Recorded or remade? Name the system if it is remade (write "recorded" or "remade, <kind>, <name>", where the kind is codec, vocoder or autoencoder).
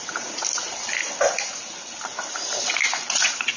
recorded